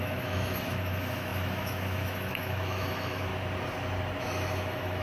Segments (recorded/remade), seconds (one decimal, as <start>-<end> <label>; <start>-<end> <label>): 0.0-3.3 remade; 3.3-4.2 recorded; 4.2-5.0 remade